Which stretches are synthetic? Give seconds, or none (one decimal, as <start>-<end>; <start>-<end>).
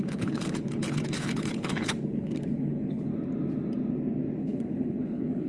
0.0-3.1; 4.4-5.5